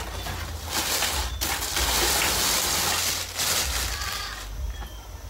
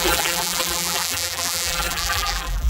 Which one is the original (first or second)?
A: first